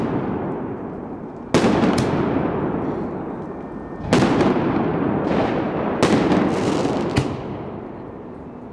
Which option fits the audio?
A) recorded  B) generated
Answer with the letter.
A